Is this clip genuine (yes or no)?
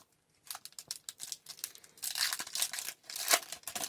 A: yes